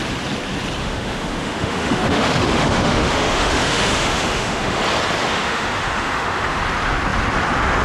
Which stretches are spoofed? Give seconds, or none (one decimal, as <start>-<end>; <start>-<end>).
0.8-4.8; 5.3-6.6